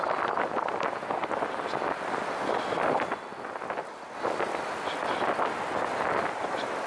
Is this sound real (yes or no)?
yes